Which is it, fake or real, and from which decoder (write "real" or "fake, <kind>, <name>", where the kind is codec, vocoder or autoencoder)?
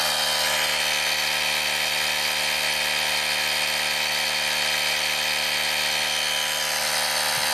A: real